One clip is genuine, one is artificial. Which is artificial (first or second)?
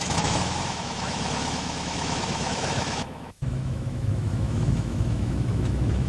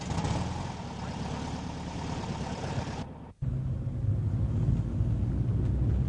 first